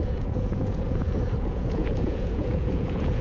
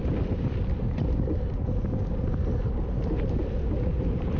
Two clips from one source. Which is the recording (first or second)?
second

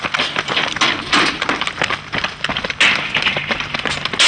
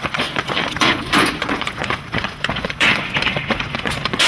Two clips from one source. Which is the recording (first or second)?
first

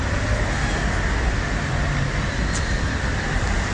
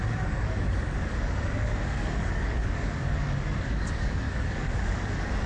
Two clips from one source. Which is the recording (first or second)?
first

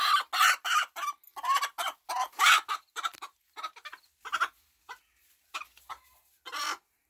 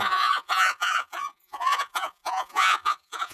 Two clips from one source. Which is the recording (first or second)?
first